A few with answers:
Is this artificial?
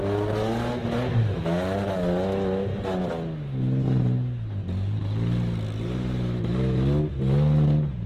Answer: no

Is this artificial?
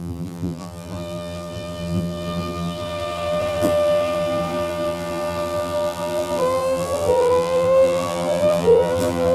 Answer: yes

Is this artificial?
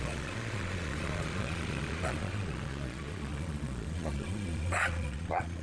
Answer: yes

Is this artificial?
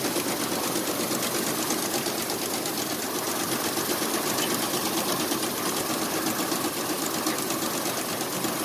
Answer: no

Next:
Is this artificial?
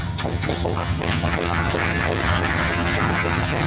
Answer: yes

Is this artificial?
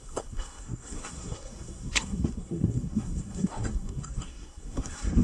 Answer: yes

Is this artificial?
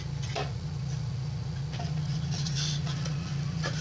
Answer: yes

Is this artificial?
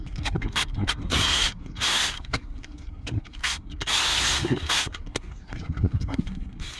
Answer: yes